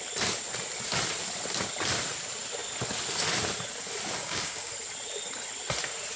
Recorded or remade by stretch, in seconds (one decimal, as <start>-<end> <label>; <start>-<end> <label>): 0.0-4.2 recorded; 4.2-4.7 remade; 4.7-6.2 recorded